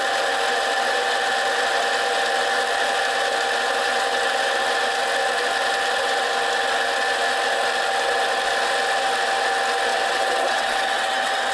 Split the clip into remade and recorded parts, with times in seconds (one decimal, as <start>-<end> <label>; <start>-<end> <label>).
0.0-9.9 recorded; 9.9-11.5 remade